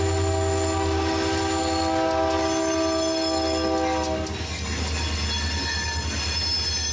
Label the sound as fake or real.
real